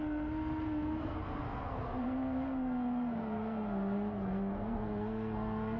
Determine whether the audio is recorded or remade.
remade